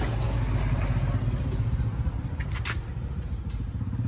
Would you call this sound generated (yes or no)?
no